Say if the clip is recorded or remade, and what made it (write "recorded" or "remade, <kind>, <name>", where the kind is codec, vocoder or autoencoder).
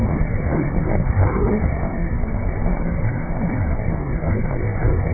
remade, codec, SNAC